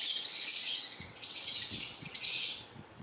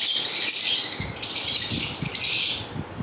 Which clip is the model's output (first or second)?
first